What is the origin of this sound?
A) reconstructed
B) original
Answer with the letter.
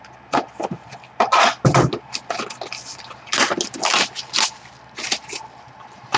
B